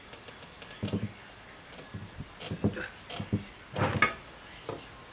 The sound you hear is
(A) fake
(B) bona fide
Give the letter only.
B